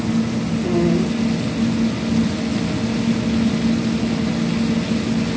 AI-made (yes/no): no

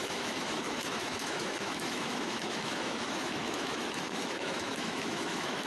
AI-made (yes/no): yes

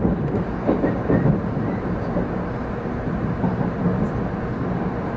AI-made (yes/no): no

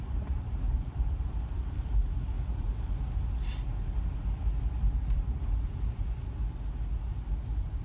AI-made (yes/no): no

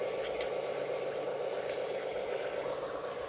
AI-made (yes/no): no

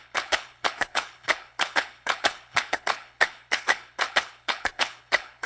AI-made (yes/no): yes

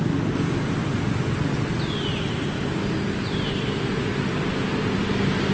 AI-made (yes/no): no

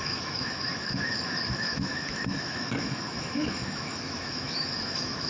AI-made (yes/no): yes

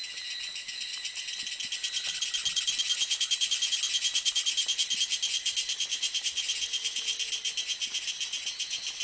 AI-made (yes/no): no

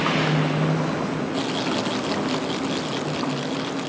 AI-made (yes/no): no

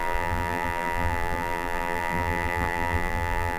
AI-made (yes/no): yes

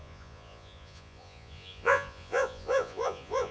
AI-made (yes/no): yes